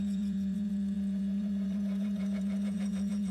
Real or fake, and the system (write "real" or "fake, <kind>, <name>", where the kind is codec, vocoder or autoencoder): fake, vocoder, Vocos